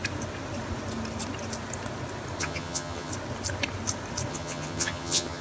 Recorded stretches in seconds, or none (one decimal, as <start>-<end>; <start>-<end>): 0.0-2.4; 3.1-4.3